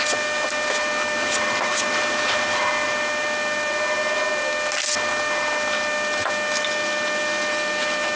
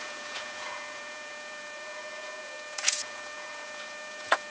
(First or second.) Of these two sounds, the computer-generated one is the second